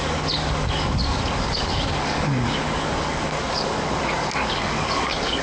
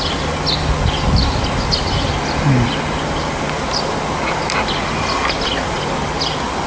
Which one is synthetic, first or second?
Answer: first